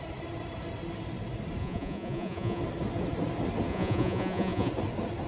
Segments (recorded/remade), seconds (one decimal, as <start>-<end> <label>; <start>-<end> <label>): 0.0-1.6 recorded; 1.6-2.6 remade; 2.6-3.7 recorded; 3.7-4.7 remade; 4.7-5.3 recorded